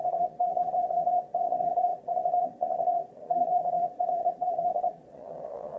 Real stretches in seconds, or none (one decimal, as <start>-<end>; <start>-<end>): none

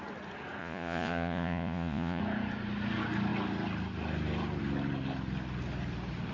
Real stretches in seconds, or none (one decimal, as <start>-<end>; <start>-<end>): 0.0-0.6; 2.2-6.3